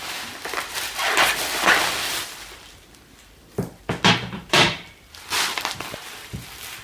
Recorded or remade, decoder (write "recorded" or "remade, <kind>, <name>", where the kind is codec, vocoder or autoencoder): remade, vocoder, BigVGAN v2